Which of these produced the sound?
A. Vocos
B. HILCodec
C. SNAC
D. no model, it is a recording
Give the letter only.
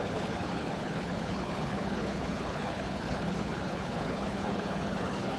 B